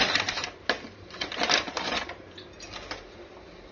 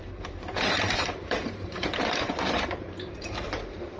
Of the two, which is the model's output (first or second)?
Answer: second